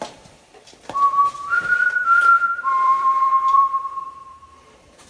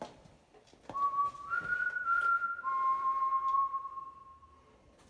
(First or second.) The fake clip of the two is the first